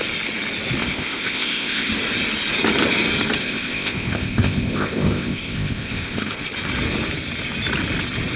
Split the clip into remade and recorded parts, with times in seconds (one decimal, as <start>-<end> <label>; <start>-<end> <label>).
0.0-0.8 recorded; 0.8-1.9 remade; 1.9-3.4 recorded; 3.4-6.4 remade; 6.4-8.4 recorded